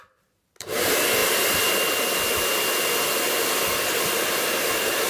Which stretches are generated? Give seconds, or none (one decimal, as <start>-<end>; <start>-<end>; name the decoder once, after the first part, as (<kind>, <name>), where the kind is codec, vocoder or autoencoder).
none